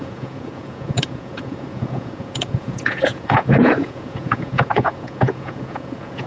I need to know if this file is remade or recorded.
remade